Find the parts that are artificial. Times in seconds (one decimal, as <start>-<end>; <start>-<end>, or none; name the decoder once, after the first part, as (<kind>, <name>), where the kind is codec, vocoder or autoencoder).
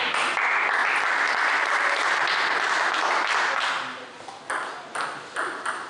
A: none